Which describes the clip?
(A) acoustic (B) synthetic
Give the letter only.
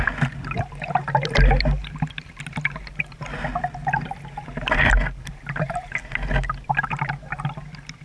A